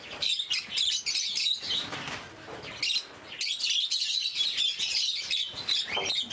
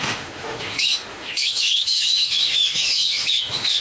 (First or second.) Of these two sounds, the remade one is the second